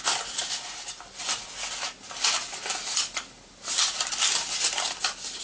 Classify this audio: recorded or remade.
recorded